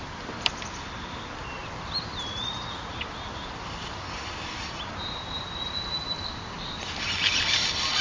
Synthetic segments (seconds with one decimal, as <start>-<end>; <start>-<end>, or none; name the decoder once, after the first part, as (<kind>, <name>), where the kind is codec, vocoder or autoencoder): 2.3-2.9 (vocoder, Vocos)